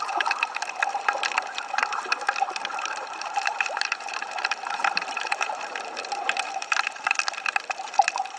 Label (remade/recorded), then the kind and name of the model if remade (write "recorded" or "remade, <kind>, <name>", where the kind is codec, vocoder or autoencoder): remade, vocoder, BigVGAN v2